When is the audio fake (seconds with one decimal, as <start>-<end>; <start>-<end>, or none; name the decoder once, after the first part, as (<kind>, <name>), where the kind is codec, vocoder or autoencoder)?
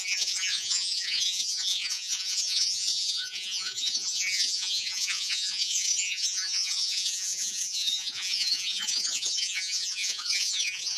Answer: 0.0-11.0 (vocoder, Vocos)